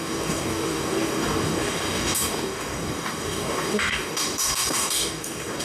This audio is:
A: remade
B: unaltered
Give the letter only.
A